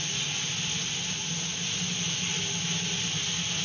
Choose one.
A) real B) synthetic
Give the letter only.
A